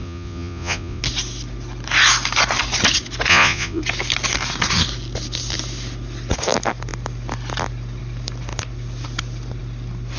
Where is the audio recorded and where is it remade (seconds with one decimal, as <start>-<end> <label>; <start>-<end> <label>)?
0.0-1.0 remade; 1.0-3.3 recorded; 3.3-3.8 remade; 3.8-10.2 recorded